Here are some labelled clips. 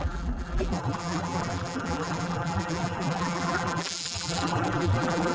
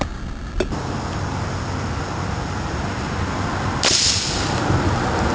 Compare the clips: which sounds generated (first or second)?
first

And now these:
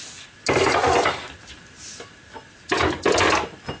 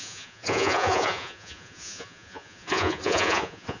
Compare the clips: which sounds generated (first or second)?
second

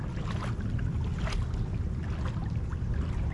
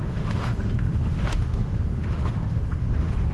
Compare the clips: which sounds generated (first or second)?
second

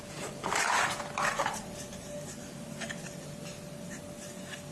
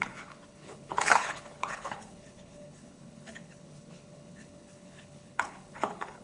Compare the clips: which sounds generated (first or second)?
second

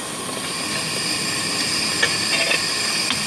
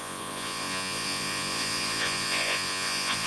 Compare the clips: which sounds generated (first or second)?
second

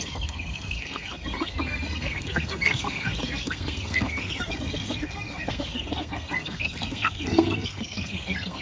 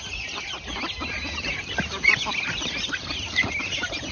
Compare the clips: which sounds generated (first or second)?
first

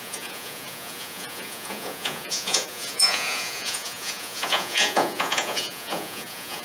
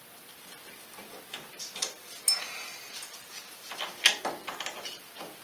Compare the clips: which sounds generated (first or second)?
first